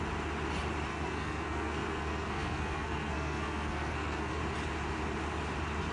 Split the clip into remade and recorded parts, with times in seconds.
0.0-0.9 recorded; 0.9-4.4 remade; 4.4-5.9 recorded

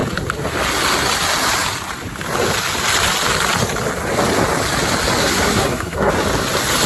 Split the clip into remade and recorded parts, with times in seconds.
0.0-5.2 recorded; 5.2-6.1 remade; 6.1-6.9 recorded

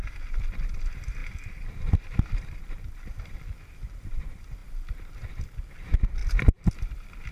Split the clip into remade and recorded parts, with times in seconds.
0.0-6.2 remade; 6.2-6.7 recorded; 6.7-7.3 remade

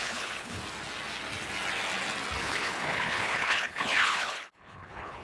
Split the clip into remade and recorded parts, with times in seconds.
0.0-0.6 remade; 0.6-2.4 recorded; 2.4-5.2 remade

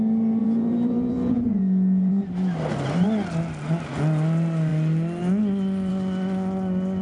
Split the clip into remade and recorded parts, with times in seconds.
0.0-0.4 recorded; 0.4-2.1 remade; 2.1-7.0 recorded

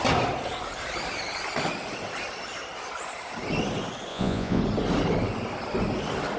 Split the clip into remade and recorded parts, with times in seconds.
0.0-4.1 recorded; 4.1-4.6 remade; 4.6-6.4 recorded

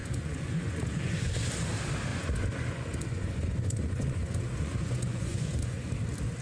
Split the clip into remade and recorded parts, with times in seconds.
0.0-1.3 remade; 1.3-2.1 recorded; 2.1-5.9 remade; 5.9-6.4 recorded

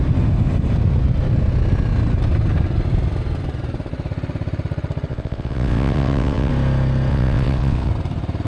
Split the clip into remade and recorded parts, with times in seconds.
0.0-5.1 recorded; 5.1-6.5 remade; 6.5-7.1 recorded; 7.1-7.9 remade; 7.9-8.5 recorded